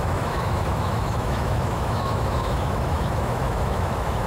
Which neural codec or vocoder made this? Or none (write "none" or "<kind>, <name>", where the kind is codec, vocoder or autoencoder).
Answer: autoencoder, DAC-VAE